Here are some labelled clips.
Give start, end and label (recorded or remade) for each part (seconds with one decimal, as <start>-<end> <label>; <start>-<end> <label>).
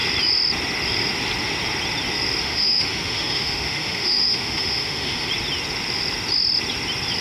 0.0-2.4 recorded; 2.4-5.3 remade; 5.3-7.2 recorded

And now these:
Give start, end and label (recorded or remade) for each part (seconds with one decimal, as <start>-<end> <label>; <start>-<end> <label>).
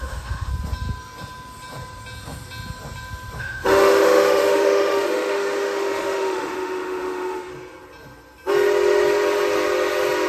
0.0-0.5 remade; 0.5-3.4 recorded; 3.4-7.5 remade; 7.5-10.3 recorded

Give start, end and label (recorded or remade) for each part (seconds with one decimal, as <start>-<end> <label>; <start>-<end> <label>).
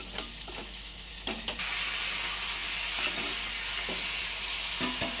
0.0-0.6 recorded; 0.6-1.1 remade; 1.1-5.2 recorded